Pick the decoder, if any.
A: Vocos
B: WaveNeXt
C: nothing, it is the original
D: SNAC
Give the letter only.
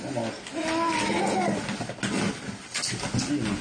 C